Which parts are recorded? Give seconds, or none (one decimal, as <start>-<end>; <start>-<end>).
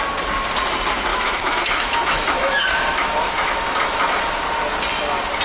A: 0.0-1.1; 4.3-5.4